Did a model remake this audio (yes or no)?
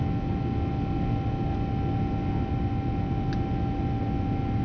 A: no